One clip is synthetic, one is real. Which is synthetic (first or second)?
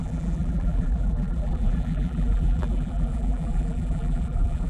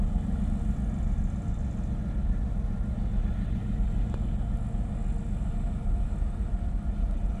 first